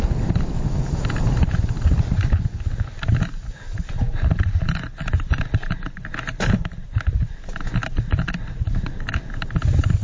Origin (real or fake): real